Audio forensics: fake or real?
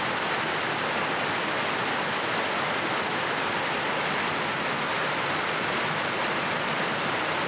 real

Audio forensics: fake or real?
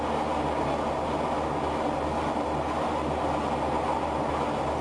real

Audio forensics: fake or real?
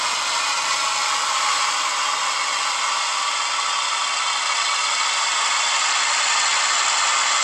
real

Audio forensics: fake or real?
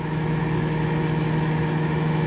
fake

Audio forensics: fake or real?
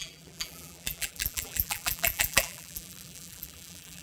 fake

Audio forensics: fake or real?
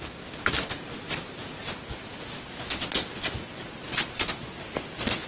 real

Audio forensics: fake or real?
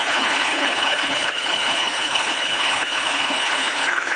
fake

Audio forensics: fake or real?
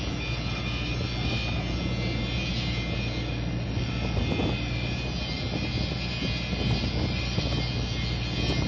real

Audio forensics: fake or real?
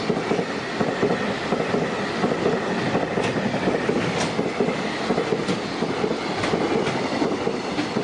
real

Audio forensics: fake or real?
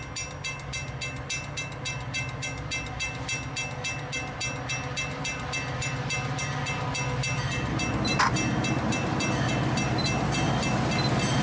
real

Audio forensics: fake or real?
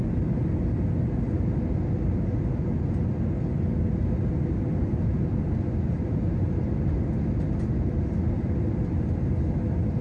real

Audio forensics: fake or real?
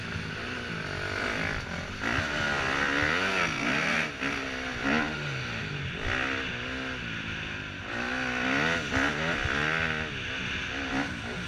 real